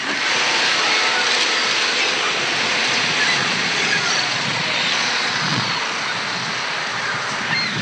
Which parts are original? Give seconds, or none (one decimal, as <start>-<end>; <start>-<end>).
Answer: 0.0-3.4; 5.8-7.8